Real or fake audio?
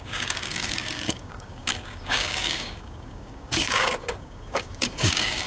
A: fake